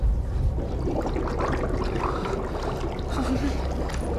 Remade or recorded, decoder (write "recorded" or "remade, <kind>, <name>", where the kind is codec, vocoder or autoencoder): recorded